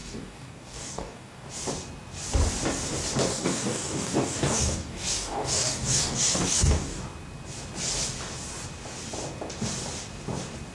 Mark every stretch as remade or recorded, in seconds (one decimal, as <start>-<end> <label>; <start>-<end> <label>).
0.0-1.5 remade; 1.5-3.3 recorded; 3.3-7.0 remade; 7.0-10.7 recorded